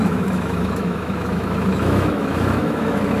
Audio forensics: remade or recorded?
remade